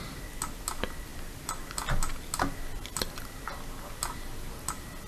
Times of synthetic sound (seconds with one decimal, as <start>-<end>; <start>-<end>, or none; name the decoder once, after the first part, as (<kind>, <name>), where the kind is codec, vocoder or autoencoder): none